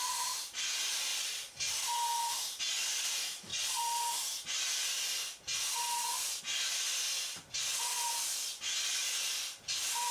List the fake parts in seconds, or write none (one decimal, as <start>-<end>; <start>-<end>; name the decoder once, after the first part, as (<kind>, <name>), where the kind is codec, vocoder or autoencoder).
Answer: none